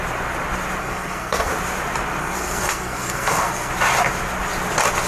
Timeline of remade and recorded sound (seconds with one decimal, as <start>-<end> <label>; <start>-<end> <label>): 0.0-0.8 recorded; 0.8-1.5 remade; 1.5-2.2 recorded; 2.2-3.7 remade; 3.7-5.1 recorded